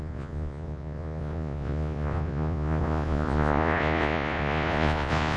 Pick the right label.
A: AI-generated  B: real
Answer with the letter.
A